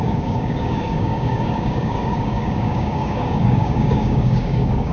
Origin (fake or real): fake